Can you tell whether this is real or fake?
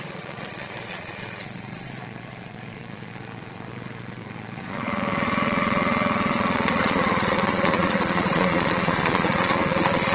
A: fake